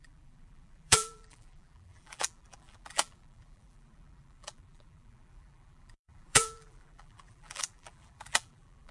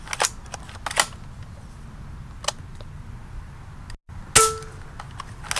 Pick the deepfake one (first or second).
first